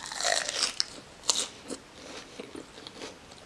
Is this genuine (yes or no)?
yes